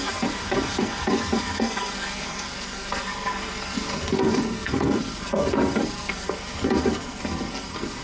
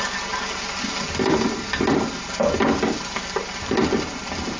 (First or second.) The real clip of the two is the second